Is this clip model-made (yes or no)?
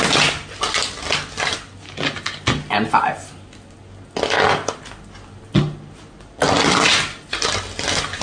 no